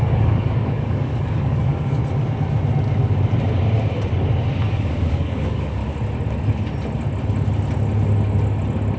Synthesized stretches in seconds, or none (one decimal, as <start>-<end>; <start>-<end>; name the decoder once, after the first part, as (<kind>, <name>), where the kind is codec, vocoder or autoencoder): 0.0-2.0 (codec, DAC); 4.7-5.8